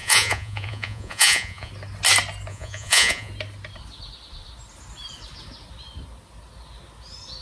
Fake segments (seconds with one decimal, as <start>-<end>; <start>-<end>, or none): 0.0-1.7; 2.5-3.3